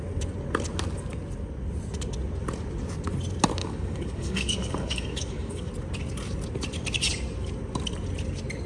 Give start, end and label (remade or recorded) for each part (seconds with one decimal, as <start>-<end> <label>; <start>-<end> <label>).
0.0-3.6 recorded; 3.6-5.7 remade; 5.7-8.7 recorded